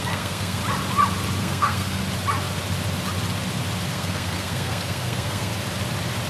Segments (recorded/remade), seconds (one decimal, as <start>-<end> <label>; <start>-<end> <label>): 0.0-0.6 remade; 0.6-1.4 recorded; 1.4-2.0 remade; 2.0-3.9 recorded; 3.9-5.5 remade; 5.5-6.3 recorded